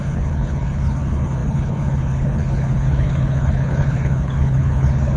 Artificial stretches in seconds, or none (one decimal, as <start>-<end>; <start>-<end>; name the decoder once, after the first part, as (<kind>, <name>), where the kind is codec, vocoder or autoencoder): 0.0-5.2 (codec, HILCodec)